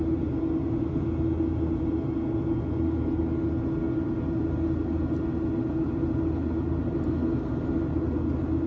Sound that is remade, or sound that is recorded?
recorded